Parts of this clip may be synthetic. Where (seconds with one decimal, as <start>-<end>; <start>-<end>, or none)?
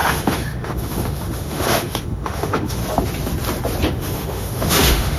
0.0-2.8; 3.9-5.2